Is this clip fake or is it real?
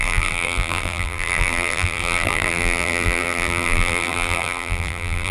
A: fake